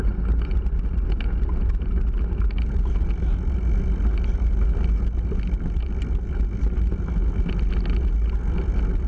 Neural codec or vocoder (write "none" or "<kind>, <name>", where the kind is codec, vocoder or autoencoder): none